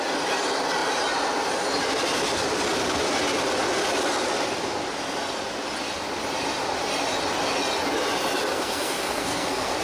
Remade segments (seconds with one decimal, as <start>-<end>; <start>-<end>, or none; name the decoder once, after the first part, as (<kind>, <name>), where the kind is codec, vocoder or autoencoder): 8.5-9.8 (codec, SNAC)